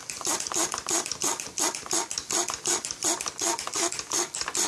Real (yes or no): yes